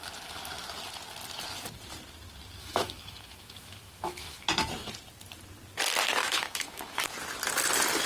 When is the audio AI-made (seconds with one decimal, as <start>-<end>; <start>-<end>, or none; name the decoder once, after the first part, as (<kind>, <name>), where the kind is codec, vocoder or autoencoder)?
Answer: 2.6-4.4 (autoencoder, DAC-VAE); 6.2-7.0